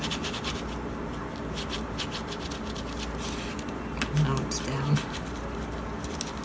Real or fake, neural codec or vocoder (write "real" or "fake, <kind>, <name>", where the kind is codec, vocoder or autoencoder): real